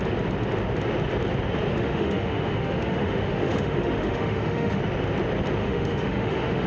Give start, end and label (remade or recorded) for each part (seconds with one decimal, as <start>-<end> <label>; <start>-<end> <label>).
0.0-1.7 recorded; 1.7-4.8 remade; 4.8-5.6 recorded; 5.6-6.7 remade

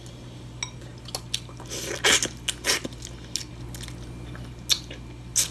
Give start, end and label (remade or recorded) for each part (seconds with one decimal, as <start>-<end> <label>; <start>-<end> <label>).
0.0-5.5 recorded

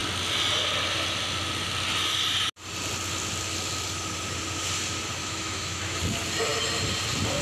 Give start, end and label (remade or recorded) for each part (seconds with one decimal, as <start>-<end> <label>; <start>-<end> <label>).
0.0-5.2 recorded; 5.2-6.0 remade; 6.0-7.4 recorded

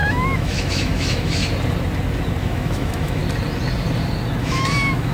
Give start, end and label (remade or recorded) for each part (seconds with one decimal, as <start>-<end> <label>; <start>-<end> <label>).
0.0-1.4 remade; 1.4-2.4 recorded; 2.4-3.2 remade; 3.2-4.4 recorded; 4.4-5.1 remade

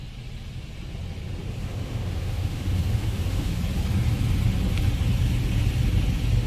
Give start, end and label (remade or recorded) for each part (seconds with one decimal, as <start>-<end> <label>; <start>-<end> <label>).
0.0-1.4 recorded; 1.4-3.6 remade; 3.6-6.5 recorded